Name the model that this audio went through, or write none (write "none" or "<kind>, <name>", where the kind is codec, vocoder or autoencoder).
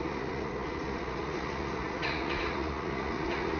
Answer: vocoder, Vocos